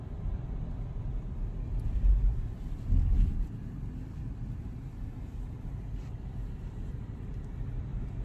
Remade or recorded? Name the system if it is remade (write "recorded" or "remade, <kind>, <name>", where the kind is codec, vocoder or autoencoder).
remade, vocoder, BigVGAN v2